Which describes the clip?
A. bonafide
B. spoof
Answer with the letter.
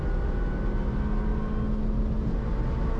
A